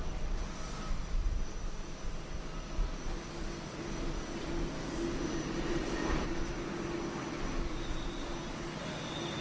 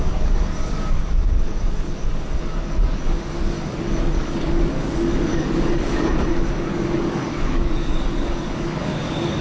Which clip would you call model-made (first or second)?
second